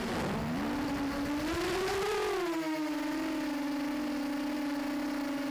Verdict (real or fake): real